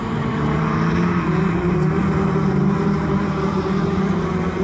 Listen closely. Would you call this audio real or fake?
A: fake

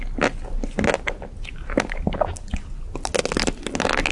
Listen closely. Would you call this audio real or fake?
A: real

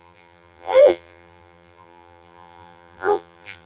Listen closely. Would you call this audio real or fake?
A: fake